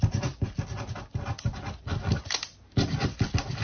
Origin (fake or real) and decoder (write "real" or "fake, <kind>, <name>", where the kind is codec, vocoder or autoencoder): real